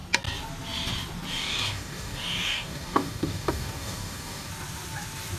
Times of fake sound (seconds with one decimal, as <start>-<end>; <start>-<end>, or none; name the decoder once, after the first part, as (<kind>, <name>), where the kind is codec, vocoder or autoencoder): 1.3-4.5 (codec, DAC)